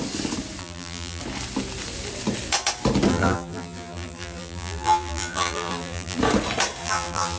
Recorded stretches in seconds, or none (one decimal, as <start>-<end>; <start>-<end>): 0.0-0.6; 1.2-3.1; 6.2-6.8